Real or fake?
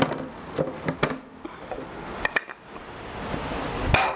real